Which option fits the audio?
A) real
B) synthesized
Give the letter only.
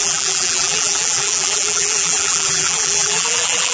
B